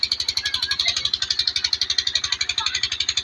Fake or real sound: real